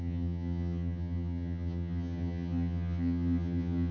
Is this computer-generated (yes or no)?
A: yes